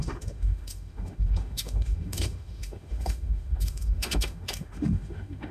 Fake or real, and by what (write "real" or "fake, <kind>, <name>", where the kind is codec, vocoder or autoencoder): fake, autoencoder, DAC-VAE